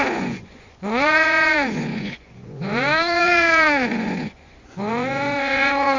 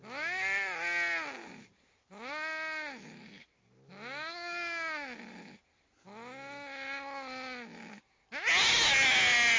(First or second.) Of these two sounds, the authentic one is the second